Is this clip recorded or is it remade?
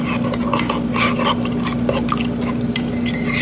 recorded